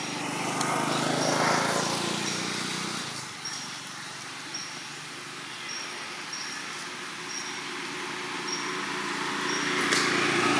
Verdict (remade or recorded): recorded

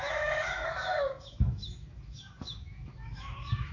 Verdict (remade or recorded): remade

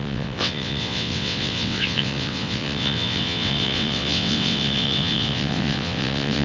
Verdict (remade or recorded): remade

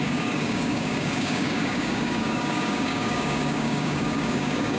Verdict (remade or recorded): remade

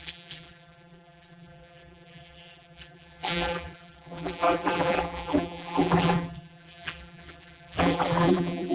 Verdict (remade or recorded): remade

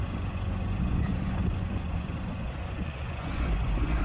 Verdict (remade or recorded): remade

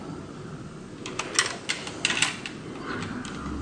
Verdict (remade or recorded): recorded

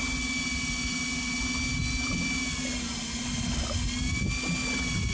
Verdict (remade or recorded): recorded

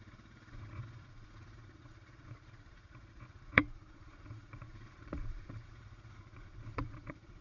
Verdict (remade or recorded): remade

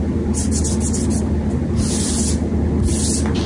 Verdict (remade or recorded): recorded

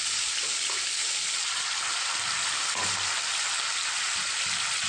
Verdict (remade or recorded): recorded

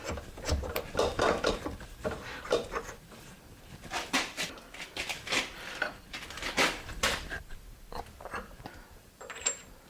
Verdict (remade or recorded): remade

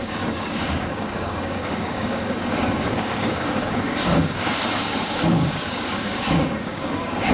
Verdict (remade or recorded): remade